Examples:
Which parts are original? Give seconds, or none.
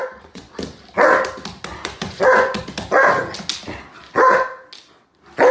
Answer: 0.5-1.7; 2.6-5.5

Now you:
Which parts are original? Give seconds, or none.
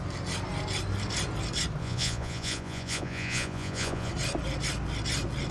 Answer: 0.0-1.8; 4.1-5.5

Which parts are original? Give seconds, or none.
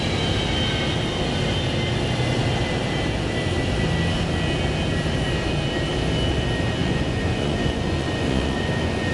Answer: 0.0-6.8